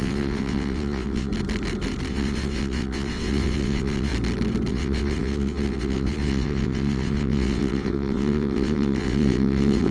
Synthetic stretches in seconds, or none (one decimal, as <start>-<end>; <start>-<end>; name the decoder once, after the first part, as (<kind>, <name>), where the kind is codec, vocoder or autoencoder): 0.0-1.3 (vocoder, WaveNeXt); 2.1-4.1; 4.7-9.9